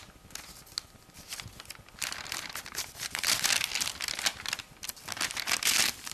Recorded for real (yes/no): yes